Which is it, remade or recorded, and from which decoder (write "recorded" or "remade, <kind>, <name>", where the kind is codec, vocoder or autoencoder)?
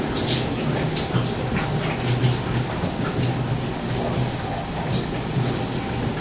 recorded